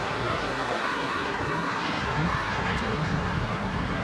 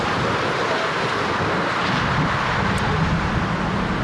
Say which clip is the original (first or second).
second